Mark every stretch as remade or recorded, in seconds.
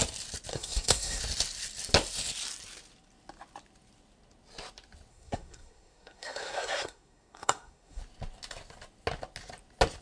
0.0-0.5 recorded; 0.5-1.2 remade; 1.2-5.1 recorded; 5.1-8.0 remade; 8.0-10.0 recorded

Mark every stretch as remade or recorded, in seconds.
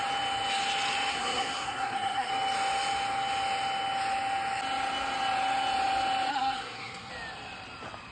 0.0-1.1 recorded; 1.1-2.3 remade; 2.3-6.3 recorded; 6.3-7.1 remade; 7.1-8.1 recorded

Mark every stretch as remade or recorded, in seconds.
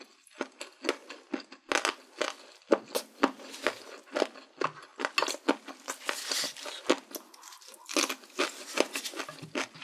0.0-9.8 recorded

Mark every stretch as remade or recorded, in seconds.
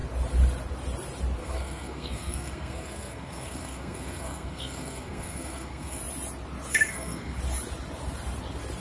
0.0-1.4 recorded; 1.4-6.0 remade; 6.0-6.7 recorded; 6.7-7.4 remade; 7.4-8.8 recorded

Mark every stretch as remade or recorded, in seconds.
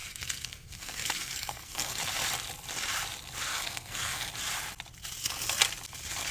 0.0-2.0 remade; 2.0-3.5 recorded; 3.5-4.3 remade; 4.3-6.3 recorded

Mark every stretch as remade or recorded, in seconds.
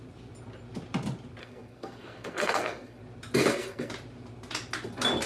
0.0-1.4 recorded; 1.4-3.0 remade; 3.0-3.4 recorded; 3.4-3.9 remade; 3.9-5.3 recorded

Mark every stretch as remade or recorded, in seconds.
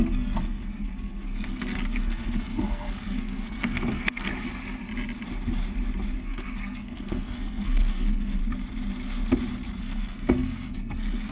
0.0-4.3 remade; 4.3-6.2 recorded; 6.2-8.4 remade; 8.4-9.8 recorded; 9.8-11.3 remade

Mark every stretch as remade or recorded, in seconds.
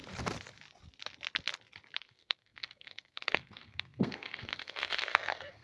0.0-2.0 recorded; 2.0-5.6 remade